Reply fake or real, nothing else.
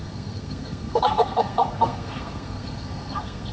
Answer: fake